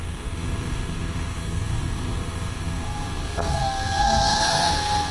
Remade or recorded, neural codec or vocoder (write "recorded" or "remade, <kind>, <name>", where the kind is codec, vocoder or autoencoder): remade, codec, SNAC